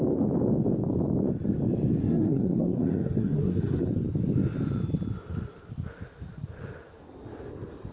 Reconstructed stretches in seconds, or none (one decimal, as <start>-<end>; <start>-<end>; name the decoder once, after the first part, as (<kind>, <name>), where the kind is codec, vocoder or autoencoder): 2.0-3.9 (codec, SNAC)